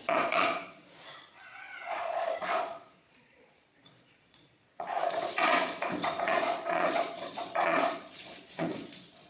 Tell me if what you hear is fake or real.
fake